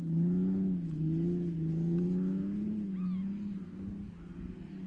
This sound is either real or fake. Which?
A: real